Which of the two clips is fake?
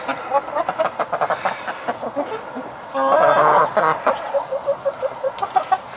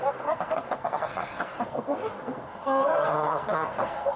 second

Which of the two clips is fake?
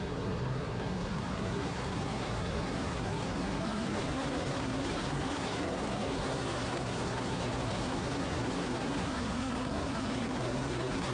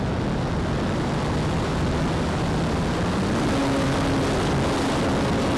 first